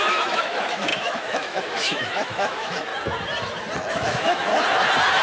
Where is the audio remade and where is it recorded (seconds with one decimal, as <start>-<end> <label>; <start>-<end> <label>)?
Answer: 0.0-2.9 remade; 2.9-3.9 recorded; 3.9-4.5 remade; 4.5-5.2 recorded